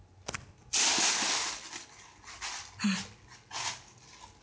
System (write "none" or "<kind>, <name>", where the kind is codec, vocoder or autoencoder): none